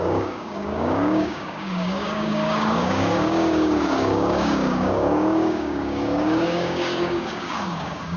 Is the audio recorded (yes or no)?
no